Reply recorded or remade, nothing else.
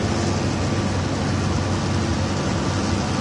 recorded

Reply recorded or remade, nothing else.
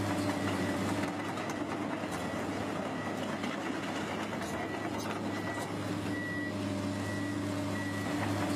recorded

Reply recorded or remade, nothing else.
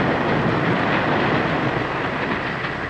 recorded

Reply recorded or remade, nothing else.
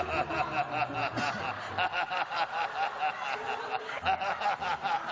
recorded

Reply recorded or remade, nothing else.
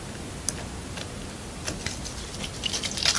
recorded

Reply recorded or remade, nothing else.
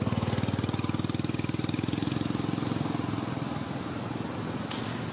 recorded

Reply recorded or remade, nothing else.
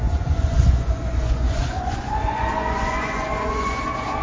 remade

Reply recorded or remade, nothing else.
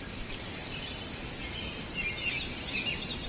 recorded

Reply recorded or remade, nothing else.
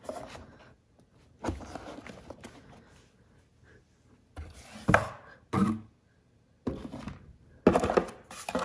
recorded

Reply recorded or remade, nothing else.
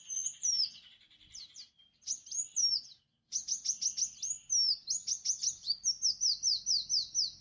recorded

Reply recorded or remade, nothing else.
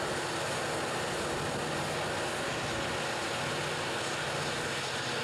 recorded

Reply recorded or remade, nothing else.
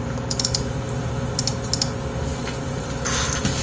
recorded